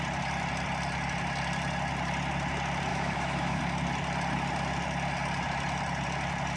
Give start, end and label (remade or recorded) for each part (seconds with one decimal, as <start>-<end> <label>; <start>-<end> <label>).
0.0-2.9 recorded; 2.9-3.6 remade; 3.6-6.6 recorded

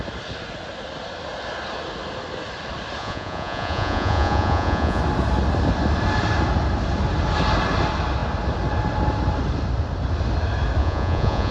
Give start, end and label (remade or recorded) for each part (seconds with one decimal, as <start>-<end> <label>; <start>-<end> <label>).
0.0-3.0 recorded; 3.0-5.0 remade; 5.0-10.8 recorded; 10.8-11.5 remade

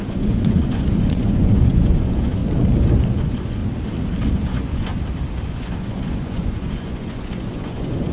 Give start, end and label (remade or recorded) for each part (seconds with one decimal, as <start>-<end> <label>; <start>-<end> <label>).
0.0-2.4 remade; 2.4-3.1 recorded; 3.1-3.6 remade; 3.6-4.3 recorded; 4.3-4.9 remade; 4.9-5.5 recorded; 5.5-8.1 remade

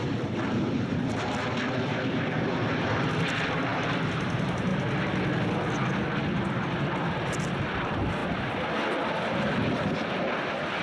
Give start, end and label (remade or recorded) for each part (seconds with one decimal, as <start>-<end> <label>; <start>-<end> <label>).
0.0-4.7 remade; 4.7-7.5 recorded; 7.5-8.2 remade; 8.2-8.7 recorded; 8.7-9.6 remade; 9.6-10.8 recorded

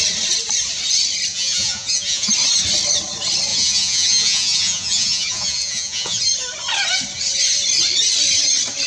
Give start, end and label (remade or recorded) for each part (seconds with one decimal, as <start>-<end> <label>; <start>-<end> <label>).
0.0-1.3 recorded; 1.3-2.3 remade; 2.3-3.5 recorded; 3.5-6.2 remade; 6.2-8.9 recorded

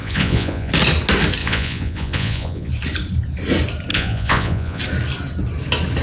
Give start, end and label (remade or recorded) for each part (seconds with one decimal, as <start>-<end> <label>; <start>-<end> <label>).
0.0-0.7 remade; 0.7-1.4 recorded; 1.4-2.7 remade; 2.7-3.9 recorded; 3.9-4.8 remade; 4.8-6.0 recorded

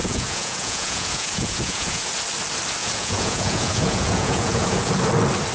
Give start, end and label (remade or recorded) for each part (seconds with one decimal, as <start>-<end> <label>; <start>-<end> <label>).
0.0-2.0 remade; 2.0-2.8 recorded; 2.8-4.9 remade; 4.9-5.5 recorded